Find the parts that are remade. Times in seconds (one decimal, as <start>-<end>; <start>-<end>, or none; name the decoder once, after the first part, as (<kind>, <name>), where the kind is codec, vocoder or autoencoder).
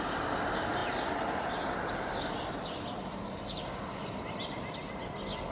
none